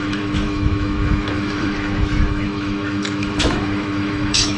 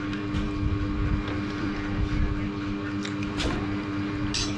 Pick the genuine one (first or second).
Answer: second